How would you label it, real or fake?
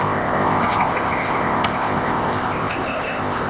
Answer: fake